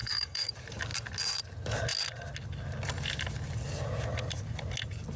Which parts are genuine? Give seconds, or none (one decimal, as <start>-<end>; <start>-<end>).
0.5-5.2

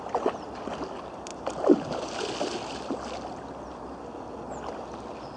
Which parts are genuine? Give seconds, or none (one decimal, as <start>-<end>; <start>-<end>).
0.0-5.4

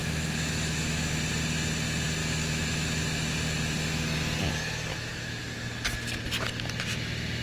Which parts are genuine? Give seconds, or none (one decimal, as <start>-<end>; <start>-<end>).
1.1-2.2; 3.0-4.9; 5.4-7.4

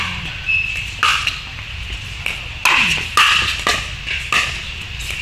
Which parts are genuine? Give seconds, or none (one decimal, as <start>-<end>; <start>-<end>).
0.0-1.1; 1.7-5.2

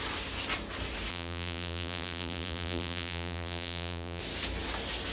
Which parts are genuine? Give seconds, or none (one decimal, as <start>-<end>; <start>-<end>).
0.0-1.1; 4.2-5.1

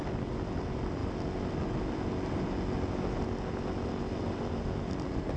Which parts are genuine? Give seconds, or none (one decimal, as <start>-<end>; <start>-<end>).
0.0-5.4

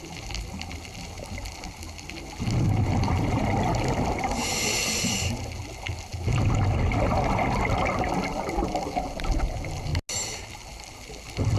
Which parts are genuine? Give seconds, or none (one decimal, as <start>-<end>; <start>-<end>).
0.0-11.6

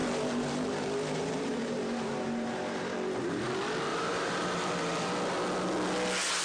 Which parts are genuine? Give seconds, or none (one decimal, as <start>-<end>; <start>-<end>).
3.5-3.9; 4.7-6.4